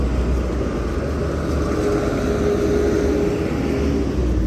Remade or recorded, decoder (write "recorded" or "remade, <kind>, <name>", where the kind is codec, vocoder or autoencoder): recorded